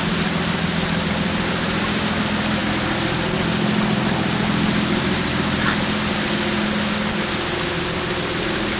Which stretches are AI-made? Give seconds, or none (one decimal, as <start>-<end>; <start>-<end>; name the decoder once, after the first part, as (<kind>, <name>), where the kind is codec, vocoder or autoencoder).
none